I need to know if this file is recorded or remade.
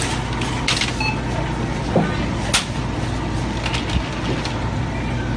recorded